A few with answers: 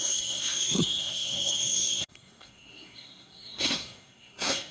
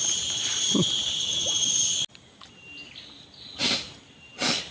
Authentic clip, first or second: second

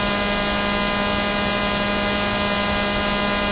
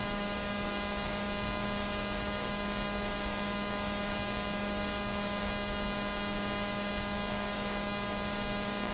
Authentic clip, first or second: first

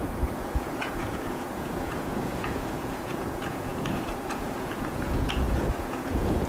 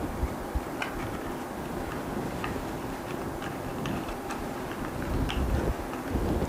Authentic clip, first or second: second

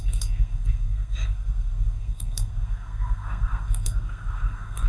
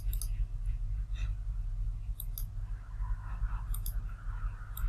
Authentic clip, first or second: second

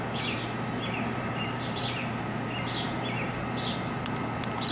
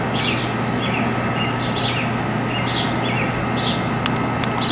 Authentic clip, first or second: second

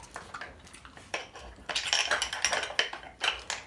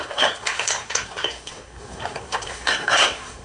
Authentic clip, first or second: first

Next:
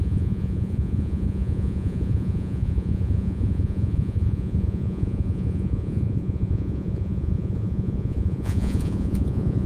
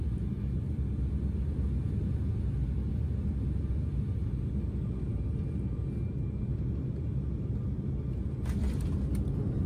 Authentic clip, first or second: second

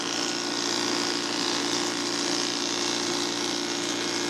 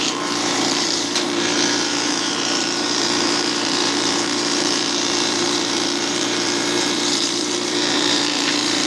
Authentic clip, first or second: first